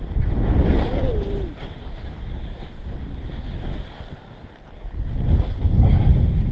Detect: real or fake real